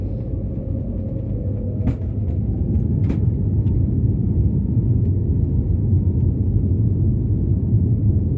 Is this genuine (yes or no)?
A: yes